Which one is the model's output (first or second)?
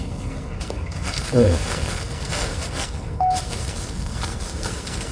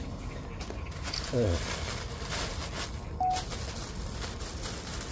first